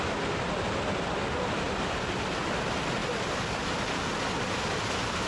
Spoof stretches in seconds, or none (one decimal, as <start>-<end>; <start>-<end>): none